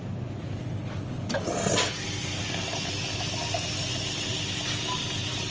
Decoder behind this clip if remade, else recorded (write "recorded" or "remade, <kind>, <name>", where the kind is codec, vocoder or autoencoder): recorded